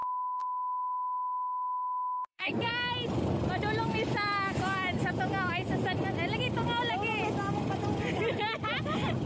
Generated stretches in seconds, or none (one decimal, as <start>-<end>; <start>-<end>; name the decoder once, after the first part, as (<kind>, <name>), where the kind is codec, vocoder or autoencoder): 0.0-2.7 (codec, SNAC)